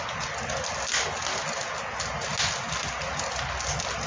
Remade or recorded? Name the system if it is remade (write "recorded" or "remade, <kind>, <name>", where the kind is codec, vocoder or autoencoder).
recorded